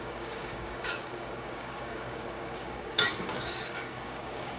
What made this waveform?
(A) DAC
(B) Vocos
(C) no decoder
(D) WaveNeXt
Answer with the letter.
A